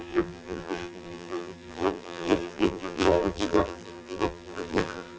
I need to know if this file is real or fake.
fake